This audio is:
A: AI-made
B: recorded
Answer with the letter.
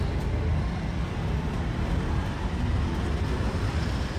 A